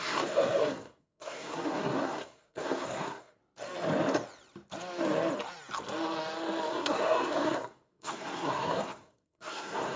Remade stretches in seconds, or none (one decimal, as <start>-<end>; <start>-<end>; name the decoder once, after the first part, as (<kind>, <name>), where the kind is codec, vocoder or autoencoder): 0.0-3.4 (codec, SNAC); 6.7-10.0